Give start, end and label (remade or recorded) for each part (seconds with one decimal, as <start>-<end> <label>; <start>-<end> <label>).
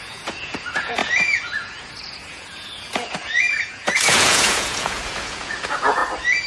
0.0-6.0 remade; 6.0-6.5 recorded